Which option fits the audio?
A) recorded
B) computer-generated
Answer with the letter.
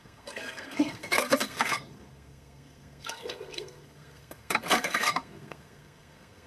B